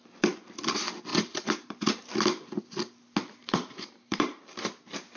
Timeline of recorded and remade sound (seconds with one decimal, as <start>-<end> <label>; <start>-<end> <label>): 0.0-1.1 recorded; 1.1-2.6 remade; 2.6-3.4 recorded; 3.4-4.4 remade; 4.4-5.2 recorded